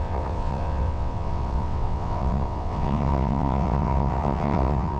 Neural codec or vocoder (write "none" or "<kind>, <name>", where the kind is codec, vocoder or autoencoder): vocoder, WaveNeXt